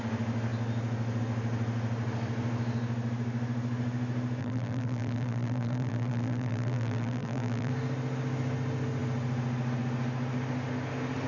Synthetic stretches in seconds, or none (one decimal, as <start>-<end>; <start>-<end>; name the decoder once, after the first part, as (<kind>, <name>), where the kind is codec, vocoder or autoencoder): 4.4-7.7 (vocoder, BigVGAN v2)